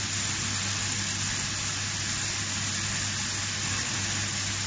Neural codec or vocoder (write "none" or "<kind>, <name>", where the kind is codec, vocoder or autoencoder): none